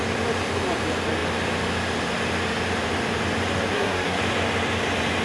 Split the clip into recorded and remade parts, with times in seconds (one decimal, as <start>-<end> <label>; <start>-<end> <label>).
0.0-3.7 recorded; 3.7-4.2 remade; 4.2-5.2 recorded